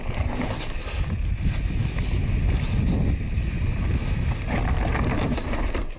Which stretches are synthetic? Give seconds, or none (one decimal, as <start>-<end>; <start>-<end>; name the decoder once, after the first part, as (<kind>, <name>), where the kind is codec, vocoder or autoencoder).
none